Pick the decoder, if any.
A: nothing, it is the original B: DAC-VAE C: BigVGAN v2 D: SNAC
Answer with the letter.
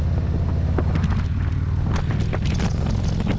A